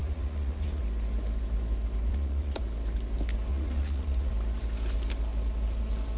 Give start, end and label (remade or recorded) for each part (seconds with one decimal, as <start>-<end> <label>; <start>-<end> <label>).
0.0-0.8 remade; 0.8-2.1 recorded; 2.1-2.6 remade; 2.6-3.5 recorded; 3.5-4.3 remade; 4.3-6.2 recorded